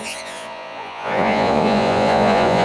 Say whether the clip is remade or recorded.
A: remade